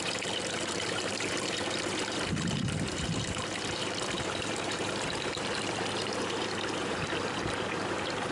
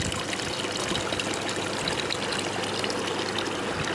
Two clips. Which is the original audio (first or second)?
second